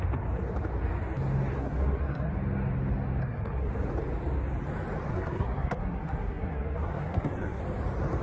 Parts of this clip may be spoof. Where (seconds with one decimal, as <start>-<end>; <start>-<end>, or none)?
1.6-2.3; 3.2-3.7; 5.1-7.6